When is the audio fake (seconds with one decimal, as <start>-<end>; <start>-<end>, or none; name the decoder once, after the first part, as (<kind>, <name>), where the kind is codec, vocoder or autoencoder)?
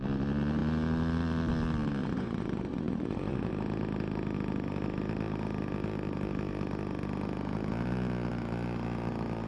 2.0-3.5 (vocoder, Vocos)